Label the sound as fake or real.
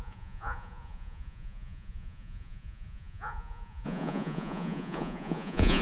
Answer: fake